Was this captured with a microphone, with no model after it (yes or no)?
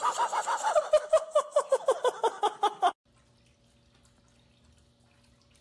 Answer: yes